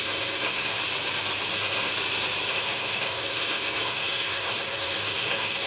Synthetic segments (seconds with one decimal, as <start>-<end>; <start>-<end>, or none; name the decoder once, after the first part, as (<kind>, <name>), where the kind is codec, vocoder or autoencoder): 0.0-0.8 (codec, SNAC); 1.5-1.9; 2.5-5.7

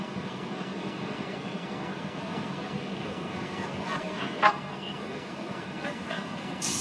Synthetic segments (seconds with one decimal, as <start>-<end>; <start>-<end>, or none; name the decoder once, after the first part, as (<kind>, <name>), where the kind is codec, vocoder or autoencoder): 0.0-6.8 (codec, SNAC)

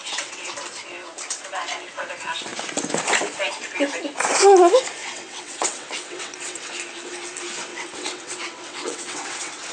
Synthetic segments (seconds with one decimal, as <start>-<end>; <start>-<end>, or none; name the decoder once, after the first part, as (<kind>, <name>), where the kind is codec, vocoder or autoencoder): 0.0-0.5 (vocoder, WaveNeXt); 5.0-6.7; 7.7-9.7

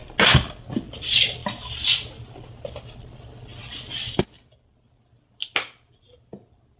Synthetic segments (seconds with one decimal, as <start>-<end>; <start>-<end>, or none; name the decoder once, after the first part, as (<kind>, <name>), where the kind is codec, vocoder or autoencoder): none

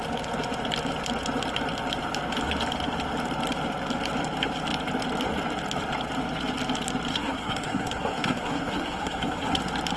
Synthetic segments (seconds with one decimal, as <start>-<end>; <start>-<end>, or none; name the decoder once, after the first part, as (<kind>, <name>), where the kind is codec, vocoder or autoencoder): 7.1-9.6 (codec, SNAC)

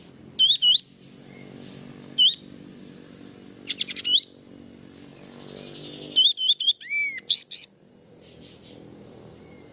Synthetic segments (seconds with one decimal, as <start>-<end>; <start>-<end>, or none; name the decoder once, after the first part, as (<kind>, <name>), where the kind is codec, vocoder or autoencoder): none

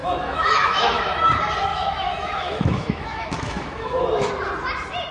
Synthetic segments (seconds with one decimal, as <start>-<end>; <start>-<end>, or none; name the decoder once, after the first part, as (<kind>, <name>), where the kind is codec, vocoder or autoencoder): 0.0-1.2 (autoencoder, DAC-VAE); 1.7-4.3

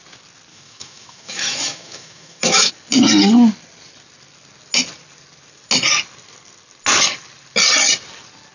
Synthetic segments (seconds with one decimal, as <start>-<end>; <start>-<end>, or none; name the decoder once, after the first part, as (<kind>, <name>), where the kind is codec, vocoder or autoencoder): 0.5-2.7 (autoencoder, DAC-VAE)